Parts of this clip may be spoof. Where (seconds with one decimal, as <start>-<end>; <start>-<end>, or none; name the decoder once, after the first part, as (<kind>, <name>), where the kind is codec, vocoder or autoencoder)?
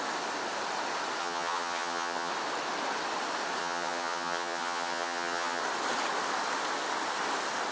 1.2-2.3 (vocoder, HiFi-GAN); 3.6-5.6